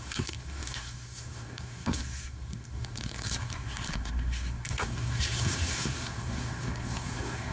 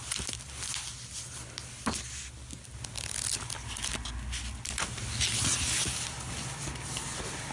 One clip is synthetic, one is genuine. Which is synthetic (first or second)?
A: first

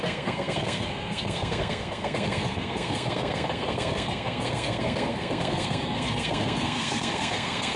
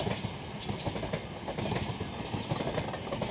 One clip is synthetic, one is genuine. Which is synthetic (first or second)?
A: first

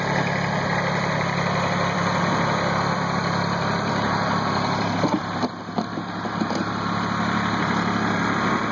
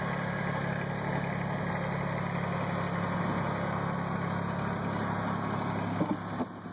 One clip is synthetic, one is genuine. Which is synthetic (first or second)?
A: first